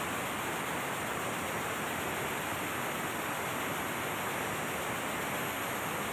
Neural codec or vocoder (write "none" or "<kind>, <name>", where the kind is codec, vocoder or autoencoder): none